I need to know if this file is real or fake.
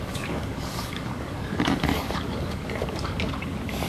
fake